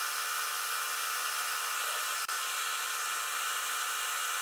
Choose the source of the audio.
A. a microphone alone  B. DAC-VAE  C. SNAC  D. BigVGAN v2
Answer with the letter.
A